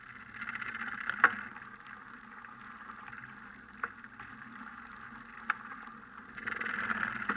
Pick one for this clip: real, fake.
real